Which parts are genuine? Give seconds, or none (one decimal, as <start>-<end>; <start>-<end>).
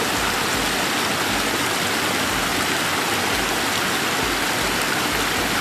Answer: 0.0-5.6